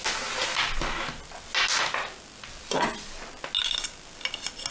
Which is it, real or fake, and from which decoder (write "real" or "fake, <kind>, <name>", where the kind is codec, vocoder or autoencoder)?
real